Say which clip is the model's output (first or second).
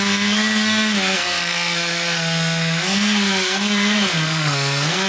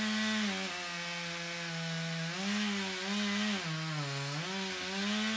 first